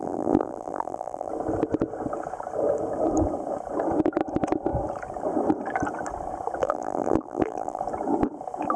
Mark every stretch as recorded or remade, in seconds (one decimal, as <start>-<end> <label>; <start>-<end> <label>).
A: 0.0-1.3 remade; 1.3-6.6 recorded; 6.6-7.8 remade; 7.8-8.8 recorded